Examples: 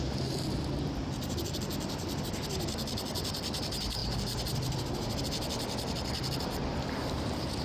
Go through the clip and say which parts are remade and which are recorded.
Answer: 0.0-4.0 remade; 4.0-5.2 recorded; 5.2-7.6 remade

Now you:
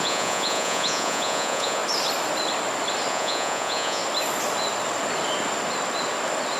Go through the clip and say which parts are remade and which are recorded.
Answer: 0.0-1.8 remade; 1.8-3.1 recorded; 3.1-4.0 remade; 4.0-6.6 recorded